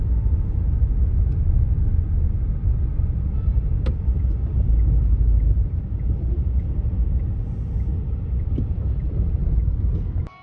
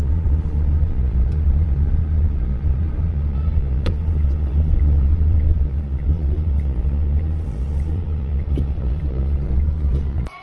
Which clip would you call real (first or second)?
first